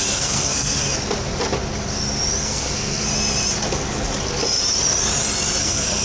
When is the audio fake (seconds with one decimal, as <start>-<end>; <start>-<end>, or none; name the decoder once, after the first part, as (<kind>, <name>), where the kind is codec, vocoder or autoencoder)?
0.0-0.8 (codec, SNAC); 2.4-3.1; 5.6-6.0